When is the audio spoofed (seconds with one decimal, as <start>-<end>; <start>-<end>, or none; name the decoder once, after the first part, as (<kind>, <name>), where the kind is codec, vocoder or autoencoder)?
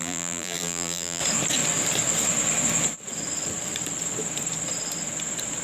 0.0-1.2 (vocoder, BigVGAN v2)